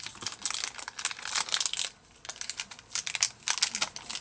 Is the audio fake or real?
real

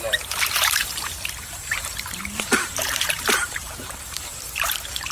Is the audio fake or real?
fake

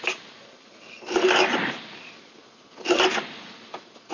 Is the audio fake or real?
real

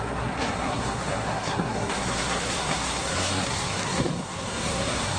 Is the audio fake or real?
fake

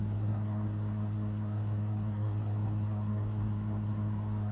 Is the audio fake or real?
fake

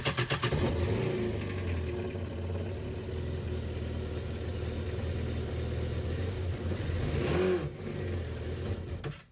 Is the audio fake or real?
real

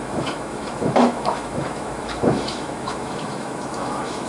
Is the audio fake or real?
fake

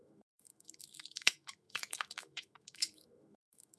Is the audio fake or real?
fake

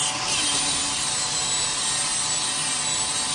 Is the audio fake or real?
real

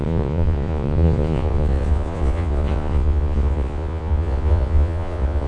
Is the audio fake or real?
fake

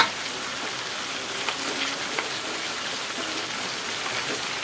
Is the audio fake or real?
real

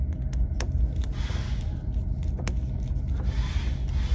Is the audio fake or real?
real